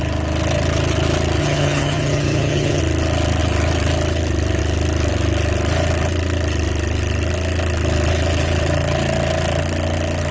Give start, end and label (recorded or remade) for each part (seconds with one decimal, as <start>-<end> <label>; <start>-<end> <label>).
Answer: 0.0-1.4 recorded; 1.4-2.8 remade; 2.8-10.3 recorded